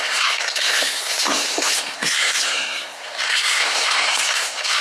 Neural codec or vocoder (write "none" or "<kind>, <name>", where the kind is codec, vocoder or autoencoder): codec, SNAC